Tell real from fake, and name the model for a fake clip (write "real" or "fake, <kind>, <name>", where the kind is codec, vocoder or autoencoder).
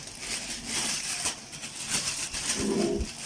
real